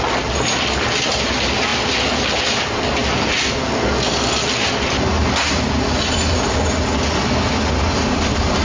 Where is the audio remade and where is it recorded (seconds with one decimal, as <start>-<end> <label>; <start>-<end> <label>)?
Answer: 0.0-8.6 recorded

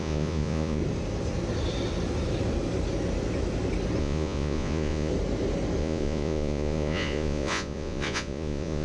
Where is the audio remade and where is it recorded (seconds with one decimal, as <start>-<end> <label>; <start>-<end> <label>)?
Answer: 0.0-0.8 remade; 0.8-4.0 recorded; 4.0-5.1 remade; 5.1-5.8 recorded; 5.8-8.8 remade

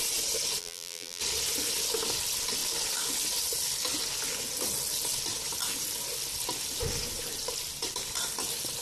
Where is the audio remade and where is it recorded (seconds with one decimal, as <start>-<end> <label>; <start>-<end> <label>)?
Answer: 0.0-0.6 recorded; 0.6-1.2 remade; 1.2-8.8 recorded